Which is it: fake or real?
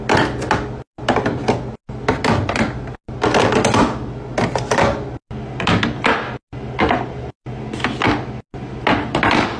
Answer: real